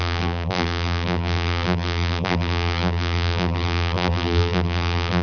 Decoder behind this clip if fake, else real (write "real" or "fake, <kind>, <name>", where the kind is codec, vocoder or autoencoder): fake, vocoder, BigVGAN v2